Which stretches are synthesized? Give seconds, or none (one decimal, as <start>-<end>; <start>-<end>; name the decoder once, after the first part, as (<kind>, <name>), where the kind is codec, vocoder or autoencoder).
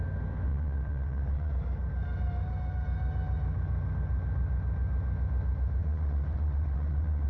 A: 0.5-1.5 (vocoder, WaveNeXt); 5.8-7.3